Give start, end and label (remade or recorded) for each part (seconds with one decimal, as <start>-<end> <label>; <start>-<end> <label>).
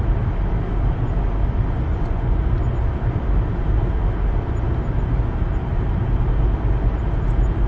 0.0-1.9 recorded; 1.9-2.5 remade; 2.5-7.7 recorded